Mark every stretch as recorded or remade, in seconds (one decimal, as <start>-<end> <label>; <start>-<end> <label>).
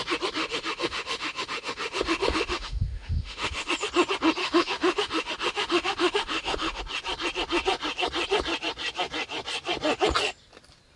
0.0-0.4 recorded; 0.4-3.7 remade; 3.7-4.4 recorded; 4.4-6.8 remade; 6.8-11.0 recorded